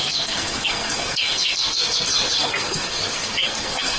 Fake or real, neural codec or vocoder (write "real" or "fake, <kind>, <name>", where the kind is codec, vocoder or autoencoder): fake, codec, SNAC